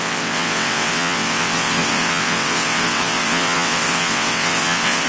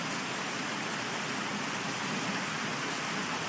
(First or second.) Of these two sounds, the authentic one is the second